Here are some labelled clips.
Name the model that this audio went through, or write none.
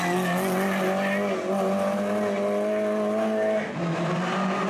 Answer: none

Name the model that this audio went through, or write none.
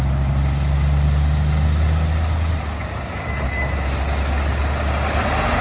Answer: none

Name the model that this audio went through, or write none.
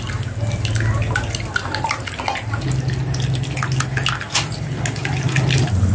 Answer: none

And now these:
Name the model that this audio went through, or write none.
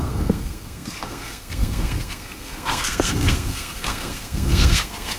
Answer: codec, SNAC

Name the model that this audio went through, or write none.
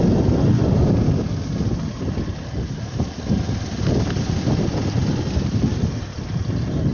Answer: none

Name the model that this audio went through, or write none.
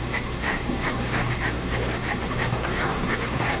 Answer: codec, SNAC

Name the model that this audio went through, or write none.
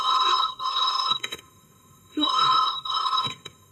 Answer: codec, SNAC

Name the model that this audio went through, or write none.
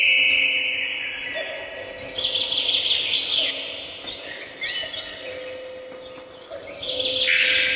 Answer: none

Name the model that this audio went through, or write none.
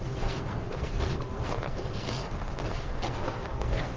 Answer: codec, SNAC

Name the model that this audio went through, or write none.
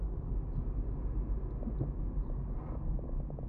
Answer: none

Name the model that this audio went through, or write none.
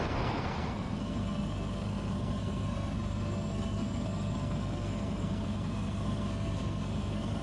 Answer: codec, SNAC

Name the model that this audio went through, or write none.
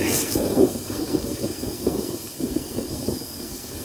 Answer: codec, SNAC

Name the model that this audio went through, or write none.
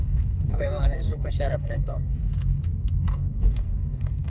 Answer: codec, SNAC